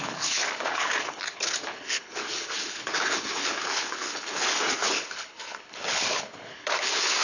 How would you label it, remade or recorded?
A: remade